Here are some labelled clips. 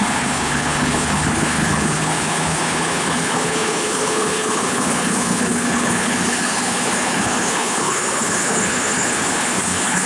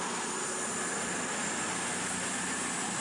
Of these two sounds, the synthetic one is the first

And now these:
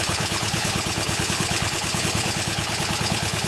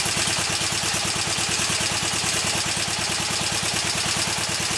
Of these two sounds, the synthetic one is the first